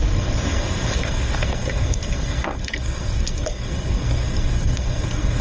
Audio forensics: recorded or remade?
remade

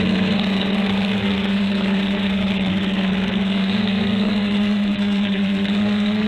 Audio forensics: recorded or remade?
remade